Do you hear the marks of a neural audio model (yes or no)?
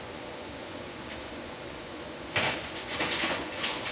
yes